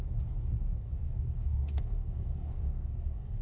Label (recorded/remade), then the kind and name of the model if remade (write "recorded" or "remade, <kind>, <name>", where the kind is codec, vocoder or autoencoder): remade, codec, SNAC